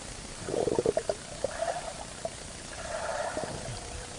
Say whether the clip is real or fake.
real